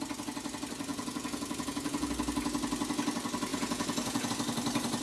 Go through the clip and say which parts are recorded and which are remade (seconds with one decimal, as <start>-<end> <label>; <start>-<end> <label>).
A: 0.0-0.9 recorded; 0.9-2.1 remade; 2.1-3.5 recorded; 3.5-4.3 remade; 4.3-5.0 recorded